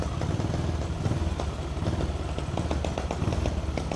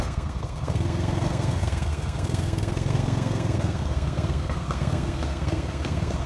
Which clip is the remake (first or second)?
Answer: second